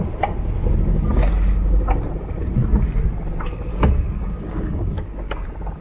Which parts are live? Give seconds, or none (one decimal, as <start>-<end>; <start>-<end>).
0.0-3.7; 5.2-5.8